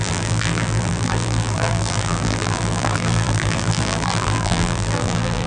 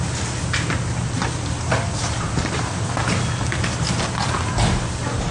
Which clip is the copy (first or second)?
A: first